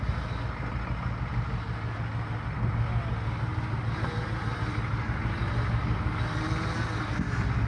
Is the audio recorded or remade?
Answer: recorded